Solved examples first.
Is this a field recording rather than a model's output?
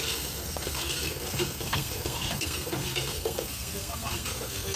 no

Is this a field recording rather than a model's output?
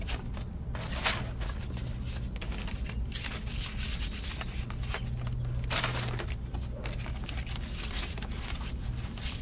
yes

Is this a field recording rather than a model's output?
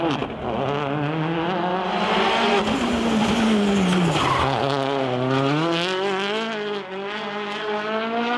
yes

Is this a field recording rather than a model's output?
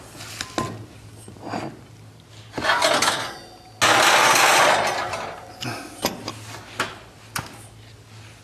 yes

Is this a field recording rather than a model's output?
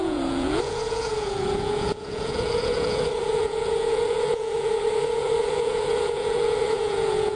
no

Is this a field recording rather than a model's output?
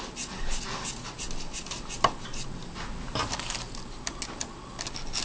yes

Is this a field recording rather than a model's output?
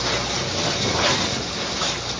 yes